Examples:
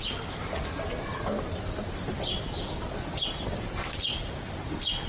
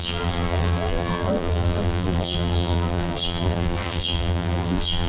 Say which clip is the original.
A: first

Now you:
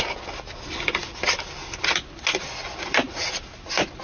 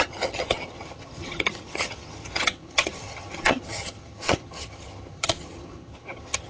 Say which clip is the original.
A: first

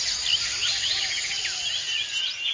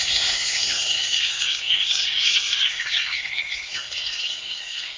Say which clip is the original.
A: first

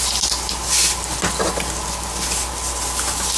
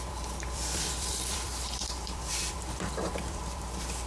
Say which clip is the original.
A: first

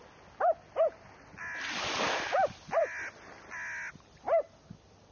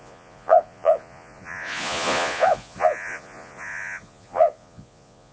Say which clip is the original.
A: first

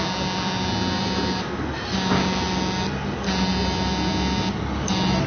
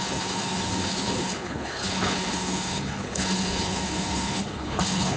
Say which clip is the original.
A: first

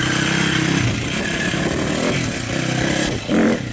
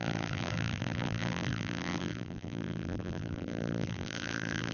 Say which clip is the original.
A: first